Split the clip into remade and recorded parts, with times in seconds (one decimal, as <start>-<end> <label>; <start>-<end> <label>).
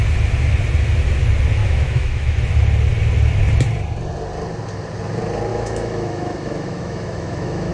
0.0-1.6 recorded; 1.6-2.4 remade; 2.4-5.5 recorded; 5.5-7.7 remade